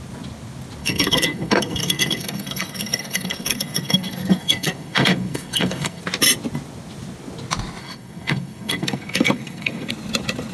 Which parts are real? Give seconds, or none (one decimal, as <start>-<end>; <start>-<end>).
0.0-0.8; 6.0-7.8; 9.9-10.5